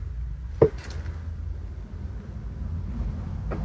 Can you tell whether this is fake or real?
real